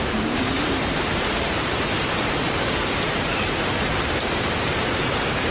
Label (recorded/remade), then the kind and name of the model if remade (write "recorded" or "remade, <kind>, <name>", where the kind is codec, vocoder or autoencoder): remade, vocoder, BigVGAN v2